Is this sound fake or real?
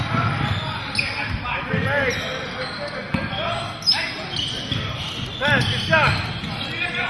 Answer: real